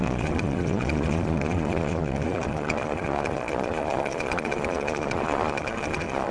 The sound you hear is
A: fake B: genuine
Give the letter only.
A